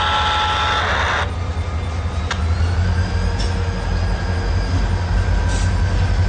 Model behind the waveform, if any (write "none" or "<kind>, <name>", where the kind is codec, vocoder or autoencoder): none